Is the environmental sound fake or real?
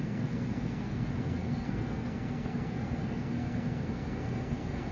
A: fake